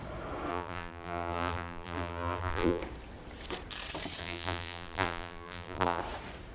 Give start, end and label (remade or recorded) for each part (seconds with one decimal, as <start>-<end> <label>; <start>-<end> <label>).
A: 0.0-0.5 recorded; 0.5-2.8 remade; 2.8-4.2 recorded; 4.2-6.0 remade; 6.0-6.5 recorded